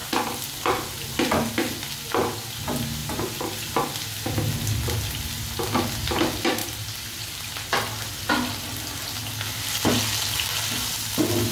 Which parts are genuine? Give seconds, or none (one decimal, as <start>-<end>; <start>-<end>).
0.0-3.0; 3.7-6.6; 7.2-11.5